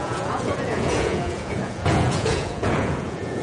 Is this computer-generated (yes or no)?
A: yes